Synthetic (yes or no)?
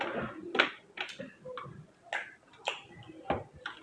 no